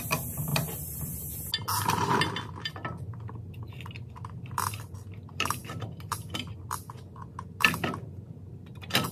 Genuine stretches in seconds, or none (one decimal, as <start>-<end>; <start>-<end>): 0.0-0.5; 1.1-9.1